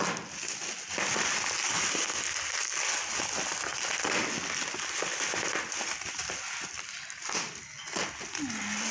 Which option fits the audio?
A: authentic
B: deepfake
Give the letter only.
A